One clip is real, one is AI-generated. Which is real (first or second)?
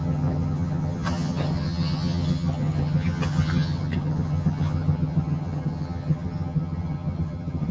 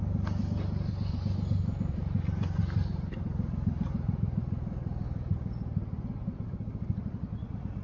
second